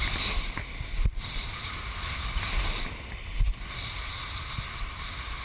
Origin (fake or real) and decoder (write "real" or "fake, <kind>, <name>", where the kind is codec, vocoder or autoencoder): real